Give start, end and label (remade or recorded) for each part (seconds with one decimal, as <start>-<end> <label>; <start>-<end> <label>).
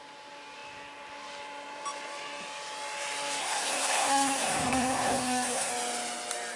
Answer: 0.0-3.4 recorded; 3.4-5.7 remade; 5.7-6.6 recorded